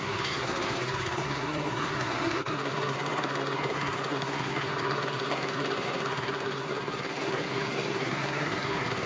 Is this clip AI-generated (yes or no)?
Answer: yes